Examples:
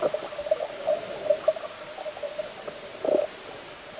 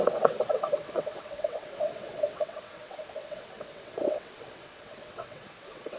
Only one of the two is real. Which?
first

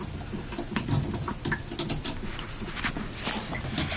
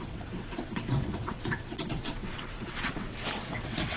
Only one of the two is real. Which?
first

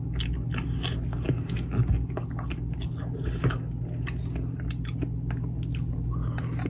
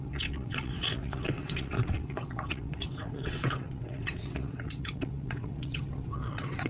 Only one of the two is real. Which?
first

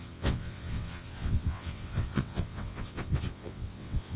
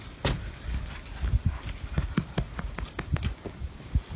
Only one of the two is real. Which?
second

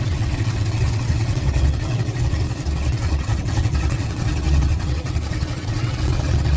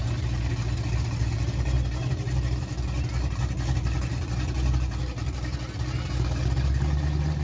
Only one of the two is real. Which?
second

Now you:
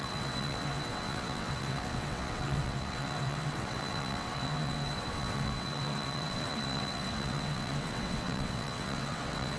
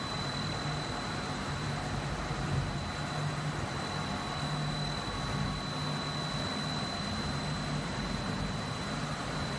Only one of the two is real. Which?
second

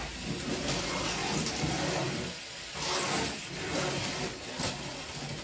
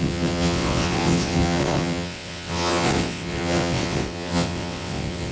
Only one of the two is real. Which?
first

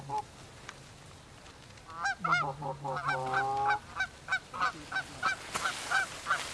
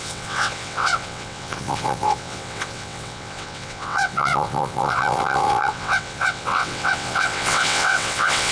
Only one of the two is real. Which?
first